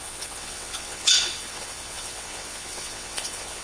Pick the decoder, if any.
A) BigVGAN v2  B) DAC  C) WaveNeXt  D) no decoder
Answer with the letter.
C